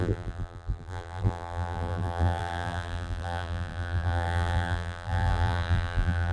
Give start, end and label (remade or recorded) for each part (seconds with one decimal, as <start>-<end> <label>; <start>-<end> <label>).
0.0-6.3 remade